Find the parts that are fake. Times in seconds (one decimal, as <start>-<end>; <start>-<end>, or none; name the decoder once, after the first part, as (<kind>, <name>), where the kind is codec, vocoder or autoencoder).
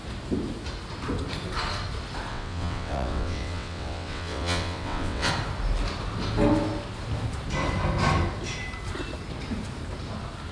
2.3-5.3 (vocoder, WaveNeXt)